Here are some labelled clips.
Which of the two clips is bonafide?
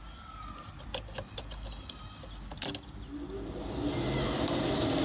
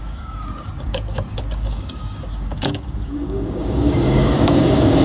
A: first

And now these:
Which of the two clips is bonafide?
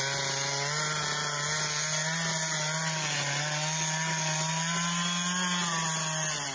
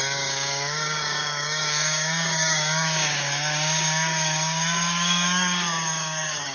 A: first